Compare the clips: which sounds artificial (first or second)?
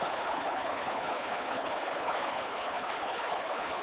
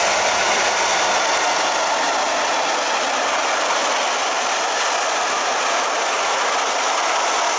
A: first